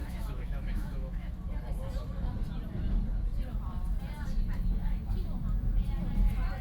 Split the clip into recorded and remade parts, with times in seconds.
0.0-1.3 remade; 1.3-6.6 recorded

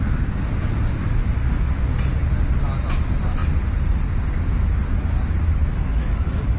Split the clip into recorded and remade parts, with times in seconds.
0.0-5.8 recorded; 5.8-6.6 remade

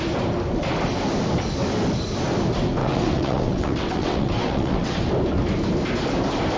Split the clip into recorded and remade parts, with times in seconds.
0.0-2.8 recorded; 2.8-5.0 remade; 5.0-6.6 recorded